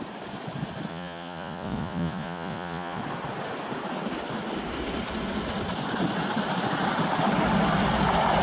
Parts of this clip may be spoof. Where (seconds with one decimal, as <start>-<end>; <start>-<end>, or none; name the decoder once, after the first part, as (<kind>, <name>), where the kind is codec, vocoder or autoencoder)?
0.9-3.0 (vocoder, Vocos)

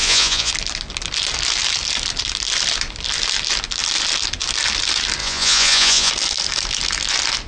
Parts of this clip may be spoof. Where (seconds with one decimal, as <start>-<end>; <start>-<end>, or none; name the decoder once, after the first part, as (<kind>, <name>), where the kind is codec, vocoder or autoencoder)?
0.0-0.5 (vocoder, Vocos); 5.2-6.1

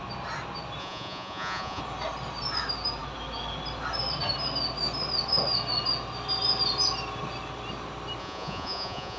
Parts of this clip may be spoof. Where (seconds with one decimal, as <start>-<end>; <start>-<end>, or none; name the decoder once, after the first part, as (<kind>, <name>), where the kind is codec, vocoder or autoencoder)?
0.8-1.8 (vocoder, Vocos); 8.2-9.2

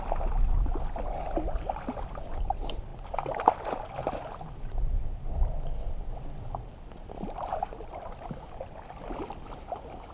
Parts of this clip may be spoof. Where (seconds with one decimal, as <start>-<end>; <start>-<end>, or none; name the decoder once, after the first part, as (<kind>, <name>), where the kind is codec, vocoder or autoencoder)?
none